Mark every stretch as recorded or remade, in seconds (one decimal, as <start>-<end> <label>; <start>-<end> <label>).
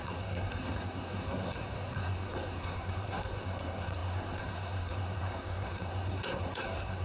0.0-7.0 remade